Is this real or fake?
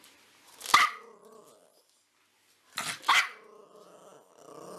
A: real